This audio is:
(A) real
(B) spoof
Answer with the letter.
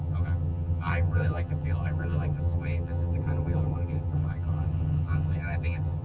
B